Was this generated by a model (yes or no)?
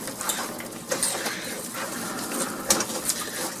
no